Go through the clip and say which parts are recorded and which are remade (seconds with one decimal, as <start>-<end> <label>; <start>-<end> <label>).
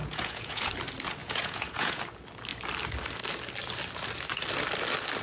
0.0-0.7 remade; 0.7-1.2 recorded; 1.2-2.0 remade; 2.0-5.2 recorded